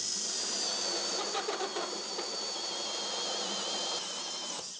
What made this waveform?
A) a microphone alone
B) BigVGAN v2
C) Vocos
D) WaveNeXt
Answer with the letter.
A